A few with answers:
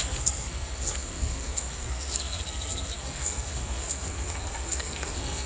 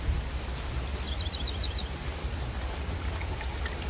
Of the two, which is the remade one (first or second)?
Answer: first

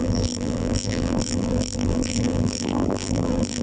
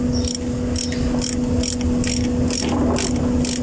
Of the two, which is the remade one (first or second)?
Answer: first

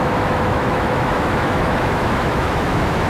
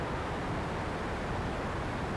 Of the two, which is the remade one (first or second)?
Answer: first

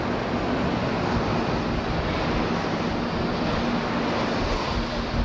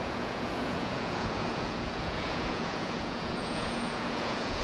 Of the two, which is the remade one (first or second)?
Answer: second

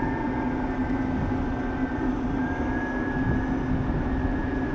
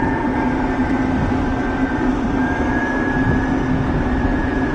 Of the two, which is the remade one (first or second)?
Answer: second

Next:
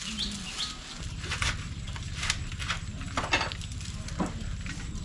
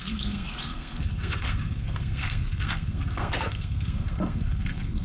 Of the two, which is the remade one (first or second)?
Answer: second